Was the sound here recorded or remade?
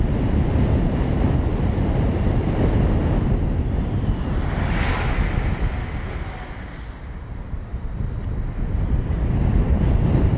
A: recorded